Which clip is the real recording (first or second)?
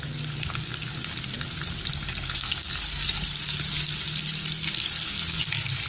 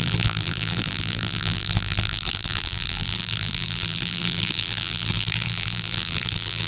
first